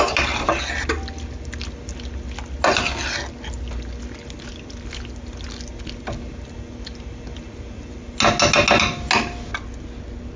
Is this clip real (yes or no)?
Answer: yes